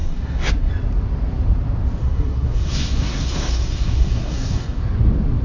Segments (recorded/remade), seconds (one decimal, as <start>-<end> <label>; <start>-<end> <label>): 0.0-0.7 remade; 0.7-2.0 recorded; 2.0-4.8 remade; 4.8-5.4 recorded

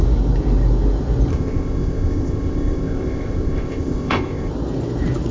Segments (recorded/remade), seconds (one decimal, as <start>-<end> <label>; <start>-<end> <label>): 0.0-1.3 recorded; 1.3-4.5 remade; 4.5-5.3 recorded